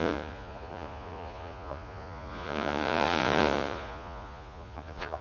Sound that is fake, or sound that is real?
fake